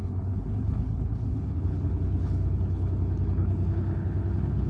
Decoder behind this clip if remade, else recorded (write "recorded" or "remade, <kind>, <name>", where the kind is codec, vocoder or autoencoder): remade, codec, HILCodec